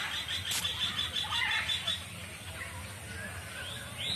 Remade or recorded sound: recorded